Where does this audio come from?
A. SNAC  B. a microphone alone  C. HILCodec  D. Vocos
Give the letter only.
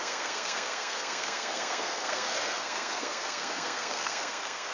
A